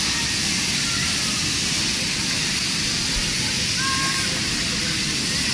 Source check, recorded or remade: recorded